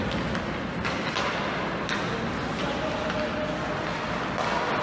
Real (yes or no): yes